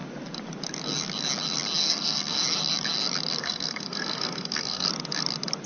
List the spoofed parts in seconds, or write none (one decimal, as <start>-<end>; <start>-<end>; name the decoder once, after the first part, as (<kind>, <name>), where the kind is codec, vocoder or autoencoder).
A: 1.8-2.4 (codec, SNAC); 3.4-4.9